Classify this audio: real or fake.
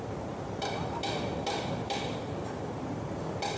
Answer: fake